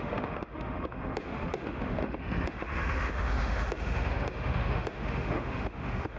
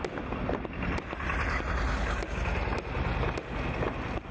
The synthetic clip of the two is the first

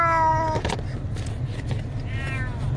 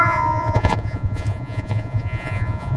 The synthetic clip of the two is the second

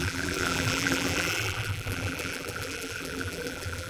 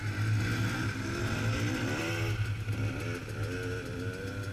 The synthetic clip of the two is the first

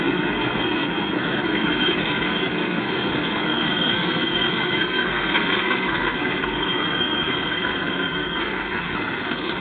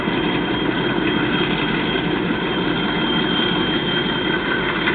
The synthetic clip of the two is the first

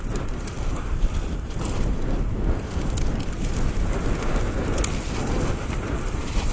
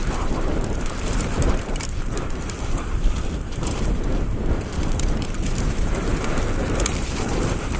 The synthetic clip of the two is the second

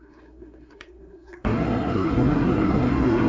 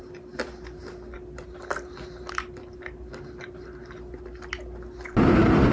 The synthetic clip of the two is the first